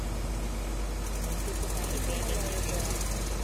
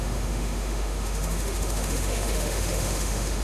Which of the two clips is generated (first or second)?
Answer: second